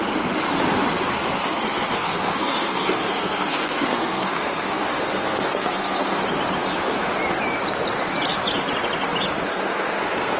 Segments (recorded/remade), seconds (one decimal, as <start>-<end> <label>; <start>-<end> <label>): 0.0-1.4 recorded; 1.4-6.2 remade; 6.2-9.5 recorded; 9.5-10.4 remade